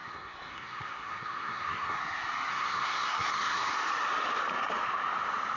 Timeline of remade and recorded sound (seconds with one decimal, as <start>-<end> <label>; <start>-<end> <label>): 0.0-2.0 remade; 2.0-2.5 recorded; 2.5-3.7 remade; 3.7-5.6 recorded